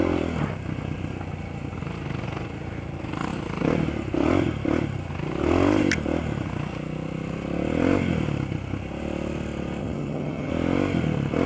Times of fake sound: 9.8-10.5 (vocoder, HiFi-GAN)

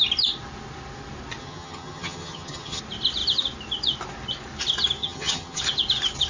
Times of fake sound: 1.4-2.8 (vocoder, HiFi-GAN); 5.0-5.6

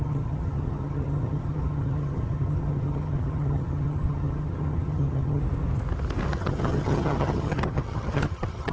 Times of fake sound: 0.0-5.4 (vocoder, HiFi-GAN); 6.3-8.7

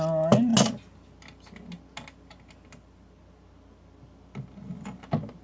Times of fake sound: none

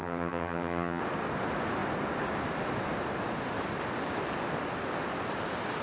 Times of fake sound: 0.0-1.0 (vocoder, HiFi-GAN)

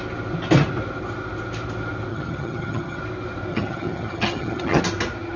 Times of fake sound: 2.1-3.0 (vocoder, HiFi-GAN); 3.5-4.8

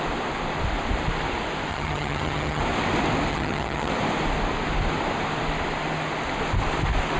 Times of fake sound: 1.7-2.6 (vocoder, HiFi-GAN); 3.3-3.9